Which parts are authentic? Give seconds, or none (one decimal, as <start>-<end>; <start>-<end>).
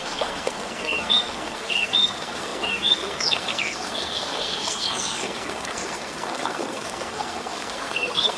none